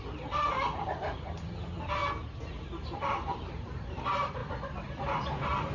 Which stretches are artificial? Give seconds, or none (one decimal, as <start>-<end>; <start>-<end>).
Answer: 0.0-2.0; 2.5-4.4; 5.1-5.7